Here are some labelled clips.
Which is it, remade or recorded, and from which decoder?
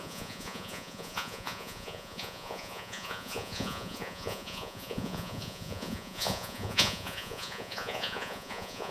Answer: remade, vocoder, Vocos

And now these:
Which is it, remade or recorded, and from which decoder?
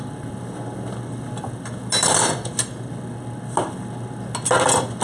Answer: recorded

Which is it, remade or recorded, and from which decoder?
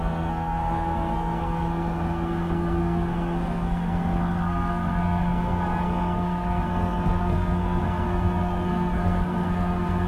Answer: remade, codec, SNAC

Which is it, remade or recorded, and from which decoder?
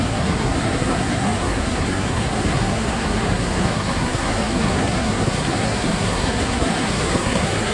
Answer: remade, codec, SNAC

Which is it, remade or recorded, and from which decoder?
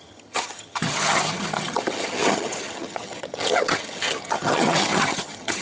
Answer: remade, vocoder, HiFi-GAN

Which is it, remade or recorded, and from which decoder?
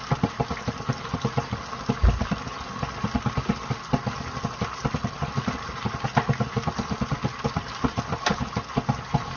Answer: recorded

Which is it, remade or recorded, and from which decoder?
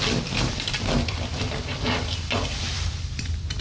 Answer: recorded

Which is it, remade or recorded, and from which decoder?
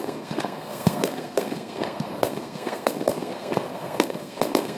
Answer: remade, codec, SNAC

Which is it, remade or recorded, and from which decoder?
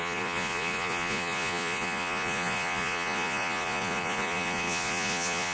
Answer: remade, vocoder, Vocos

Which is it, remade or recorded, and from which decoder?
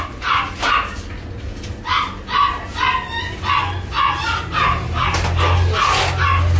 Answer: recorded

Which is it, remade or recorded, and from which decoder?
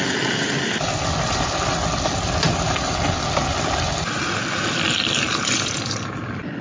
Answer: recorded